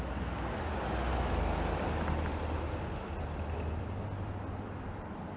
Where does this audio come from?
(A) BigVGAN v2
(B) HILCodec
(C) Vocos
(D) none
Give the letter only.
D